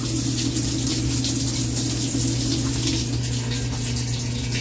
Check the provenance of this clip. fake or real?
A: real